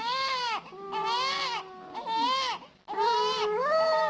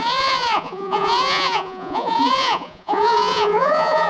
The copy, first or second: second